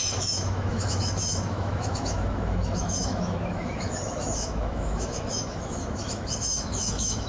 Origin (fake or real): fake